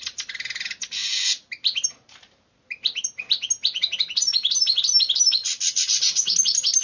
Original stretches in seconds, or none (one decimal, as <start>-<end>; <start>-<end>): 0.0-6.8